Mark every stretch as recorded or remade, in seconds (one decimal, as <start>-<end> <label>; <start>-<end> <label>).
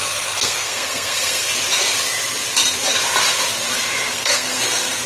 0.0-1.5 remade; 1.5-4.1 recorded; 4.1-5.1 remade